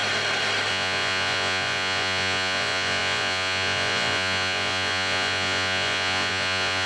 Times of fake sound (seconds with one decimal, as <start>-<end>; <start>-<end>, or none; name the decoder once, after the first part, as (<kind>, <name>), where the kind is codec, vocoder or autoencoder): 0.7-6.9 (vocoder, Vocos)